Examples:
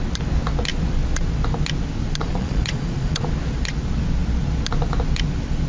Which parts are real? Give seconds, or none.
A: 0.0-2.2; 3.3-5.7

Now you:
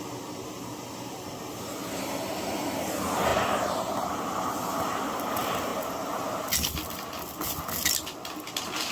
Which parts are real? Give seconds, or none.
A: 0.0-8.9

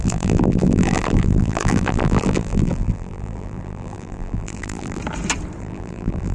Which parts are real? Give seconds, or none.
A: 5.0-5.6

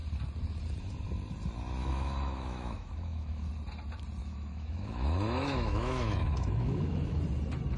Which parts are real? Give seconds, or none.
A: 0.0-1.8; 3.5-4.2; 7.2-7.8

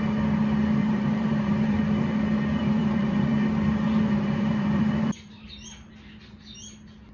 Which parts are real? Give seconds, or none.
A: 0.0-0.8; 2.1-2.6; 5.9-7.1

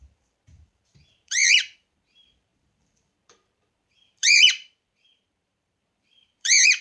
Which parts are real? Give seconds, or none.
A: none